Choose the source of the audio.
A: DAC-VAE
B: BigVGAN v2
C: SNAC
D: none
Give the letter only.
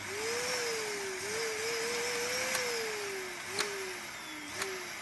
D